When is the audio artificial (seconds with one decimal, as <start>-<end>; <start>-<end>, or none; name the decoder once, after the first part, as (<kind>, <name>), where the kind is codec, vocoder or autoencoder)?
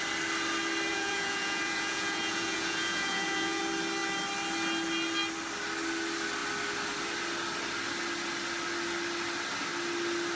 0.9-3.6 (vocoder, Vocos)